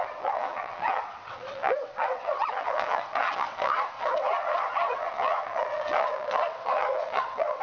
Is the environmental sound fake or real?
fake